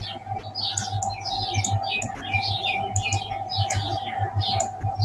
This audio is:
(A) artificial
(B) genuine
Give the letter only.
B